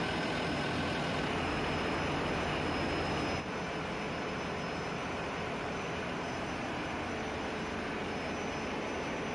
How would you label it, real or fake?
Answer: real